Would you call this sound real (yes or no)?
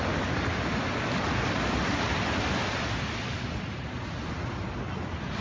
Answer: yes